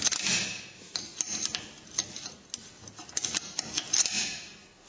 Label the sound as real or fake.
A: real